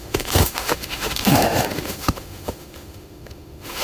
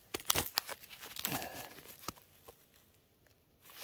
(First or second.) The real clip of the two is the second